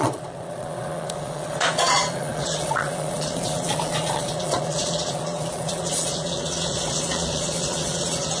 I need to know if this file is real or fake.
fake